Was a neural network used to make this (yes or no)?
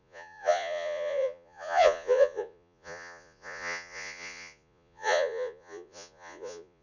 yes